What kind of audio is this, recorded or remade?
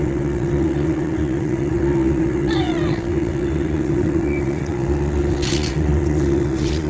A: remade